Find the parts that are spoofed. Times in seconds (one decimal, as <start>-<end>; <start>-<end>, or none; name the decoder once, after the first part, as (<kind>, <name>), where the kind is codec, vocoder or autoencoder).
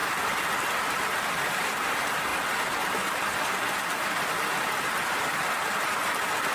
1.6-2.3 (vocoder, BigVGAN v2)